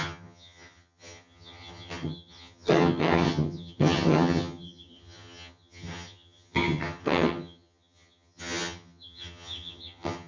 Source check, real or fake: fake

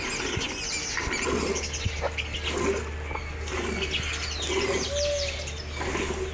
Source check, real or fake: real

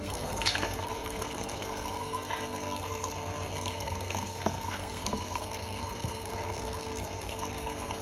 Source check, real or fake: fake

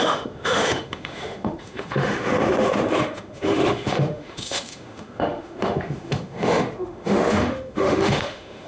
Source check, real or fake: fake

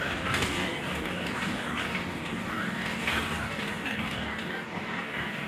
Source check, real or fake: fake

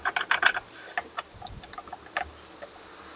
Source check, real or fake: real